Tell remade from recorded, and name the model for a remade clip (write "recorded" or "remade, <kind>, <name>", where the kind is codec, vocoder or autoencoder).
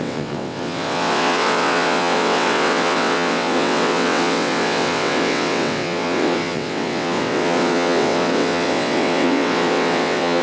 remade, vocoder, WaveNeXt